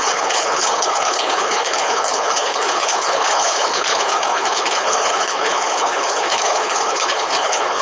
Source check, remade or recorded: remade